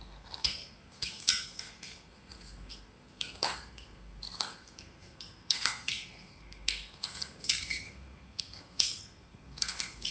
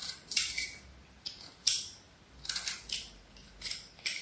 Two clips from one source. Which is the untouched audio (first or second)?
second